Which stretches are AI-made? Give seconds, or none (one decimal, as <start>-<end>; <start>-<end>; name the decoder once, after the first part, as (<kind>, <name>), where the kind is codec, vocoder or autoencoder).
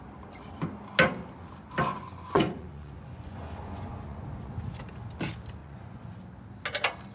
1.9-4.5 (vocoder, Vocos); 5.6-6.2